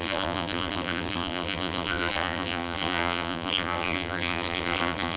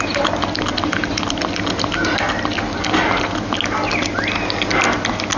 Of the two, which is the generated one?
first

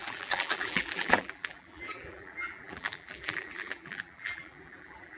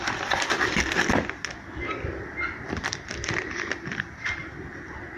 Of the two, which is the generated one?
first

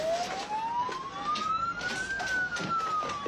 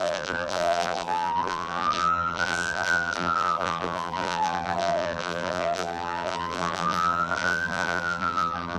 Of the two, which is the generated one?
second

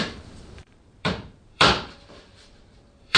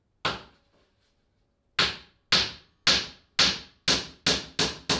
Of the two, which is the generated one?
first